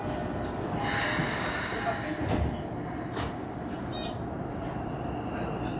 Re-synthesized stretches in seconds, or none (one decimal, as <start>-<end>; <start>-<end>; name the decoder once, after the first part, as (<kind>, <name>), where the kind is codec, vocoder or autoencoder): 3.4-5.1 (vocoder, BigVGAN v2)